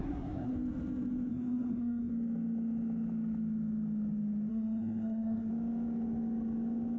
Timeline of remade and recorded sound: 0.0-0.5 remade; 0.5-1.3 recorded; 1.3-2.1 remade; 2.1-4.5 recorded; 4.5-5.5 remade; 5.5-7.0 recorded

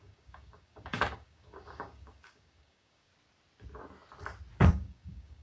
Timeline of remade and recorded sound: 0.0-3.1 remade; 3.1-4.7 recorded; 4.7-5.4 remade

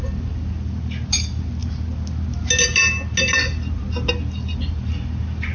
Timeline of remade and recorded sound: 0.0-5.5 recorded

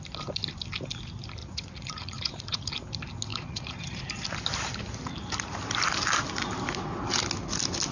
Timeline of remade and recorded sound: 0.0-1.4 recorded; 1.4-2.7 remade; 2.7-3.3 recorded; 3.3-4.0 remade; 4.0-7.9 recorded